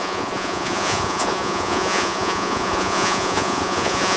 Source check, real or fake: fake